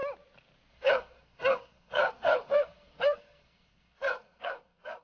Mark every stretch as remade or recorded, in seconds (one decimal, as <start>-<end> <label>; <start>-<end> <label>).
0.0-0.7 recorded; 0.7-5.0 remade